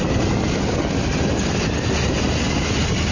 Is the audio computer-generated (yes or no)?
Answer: no